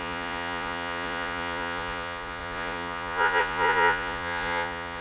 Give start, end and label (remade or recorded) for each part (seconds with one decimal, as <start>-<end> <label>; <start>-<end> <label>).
0.0-5.0 remade